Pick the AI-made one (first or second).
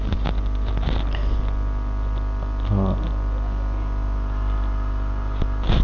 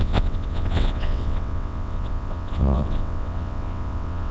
second